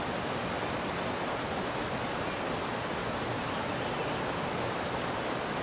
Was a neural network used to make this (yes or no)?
no